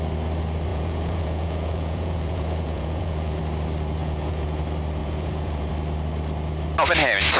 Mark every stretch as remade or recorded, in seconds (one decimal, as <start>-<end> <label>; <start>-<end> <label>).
0.0-0.7 recorded; 0.7-3.4 remade; 3.4-4.0 recorded; 4.0-4.6 remade; 4.6-5.0 recorded; 5.0-5.7 remade; 5.7-7.4 recorded